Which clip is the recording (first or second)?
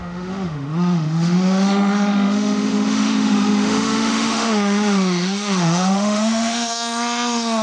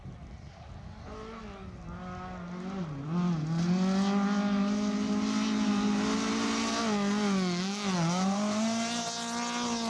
second